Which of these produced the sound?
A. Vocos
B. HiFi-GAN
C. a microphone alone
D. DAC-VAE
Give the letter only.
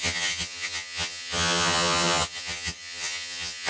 B